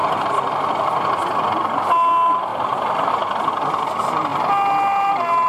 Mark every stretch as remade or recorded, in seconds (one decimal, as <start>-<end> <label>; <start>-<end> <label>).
0.0-2.5 recorded; 2.5-3.1 remade; 3.1-5.5 recorded